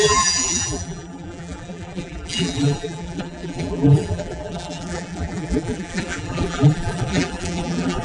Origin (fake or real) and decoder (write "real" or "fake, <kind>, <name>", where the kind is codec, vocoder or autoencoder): fake, vocoder, BigVGAN v2